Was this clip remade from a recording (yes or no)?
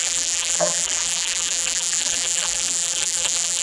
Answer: yes